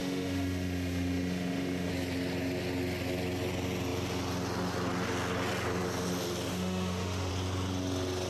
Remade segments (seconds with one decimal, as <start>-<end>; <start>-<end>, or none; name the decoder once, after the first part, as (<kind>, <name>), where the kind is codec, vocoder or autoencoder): 0.0-1.9 (autoencoder, DAC-VAE); 6.5-7.3